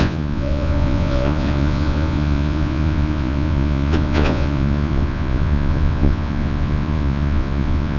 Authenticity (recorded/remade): remade